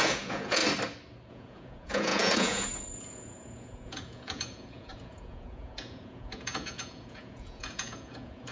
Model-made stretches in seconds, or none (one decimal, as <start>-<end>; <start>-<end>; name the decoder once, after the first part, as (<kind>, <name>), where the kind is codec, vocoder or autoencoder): 0.0-0.6 (vocoder, Vocos); 1.3-8.5